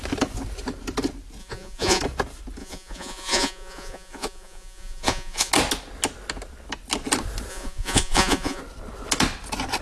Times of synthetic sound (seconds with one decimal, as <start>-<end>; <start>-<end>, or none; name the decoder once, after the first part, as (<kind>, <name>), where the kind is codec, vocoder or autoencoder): 1.4-2.0 (vocoder, Vocos); 2.6-5.5; 7.5-8.6